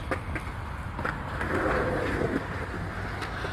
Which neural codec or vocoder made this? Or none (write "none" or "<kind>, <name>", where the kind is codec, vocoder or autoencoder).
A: none